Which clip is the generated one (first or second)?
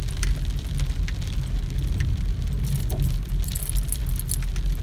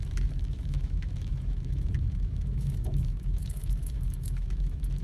second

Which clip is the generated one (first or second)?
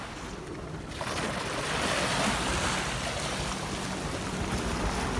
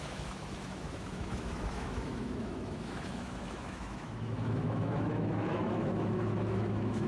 second